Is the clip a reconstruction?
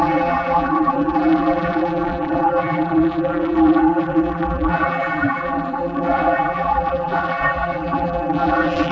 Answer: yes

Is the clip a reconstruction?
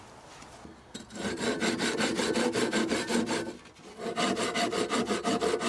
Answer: no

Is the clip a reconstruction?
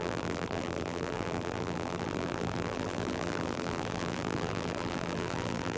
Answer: yes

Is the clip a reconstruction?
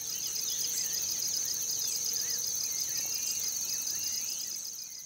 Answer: yes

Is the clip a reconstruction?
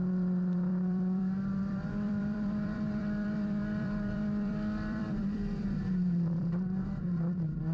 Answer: yes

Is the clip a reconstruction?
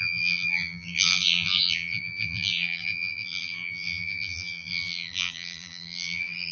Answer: yes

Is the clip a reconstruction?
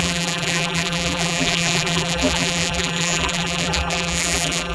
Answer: yes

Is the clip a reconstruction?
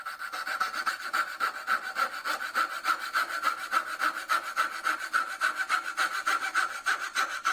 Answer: yes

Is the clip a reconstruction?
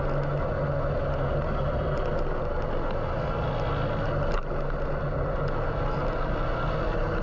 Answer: no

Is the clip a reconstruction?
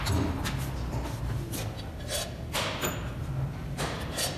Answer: no